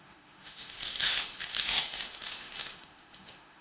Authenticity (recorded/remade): remade